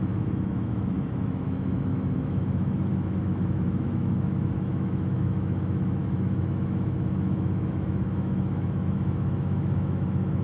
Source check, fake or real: fake